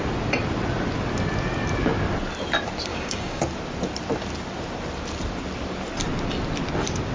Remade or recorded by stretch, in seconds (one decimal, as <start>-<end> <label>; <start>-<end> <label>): 0.0-2.9 recorded; 2.9-3.4 remade; 3.4-7.1 recorded